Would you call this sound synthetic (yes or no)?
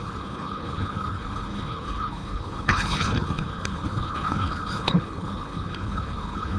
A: yes